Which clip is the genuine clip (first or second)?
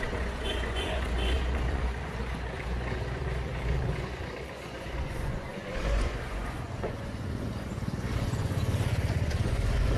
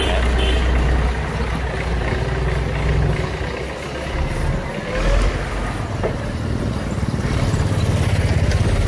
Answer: second